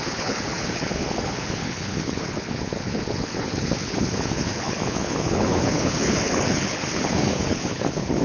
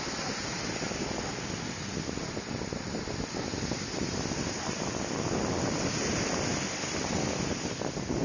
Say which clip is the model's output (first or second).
first